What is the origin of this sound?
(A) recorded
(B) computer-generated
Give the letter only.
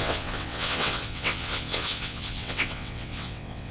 B